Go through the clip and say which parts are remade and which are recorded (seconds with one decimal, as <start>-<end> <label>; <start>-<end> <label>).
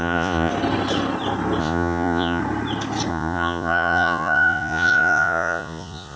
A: 0.0-0.5 remade; 0.5-1.6 recorded; 1.6-2.4 remade; 2.4-3.1 recorded; 3.1-6.2 remade